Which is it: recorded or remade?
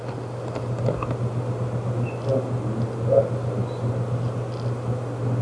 recorded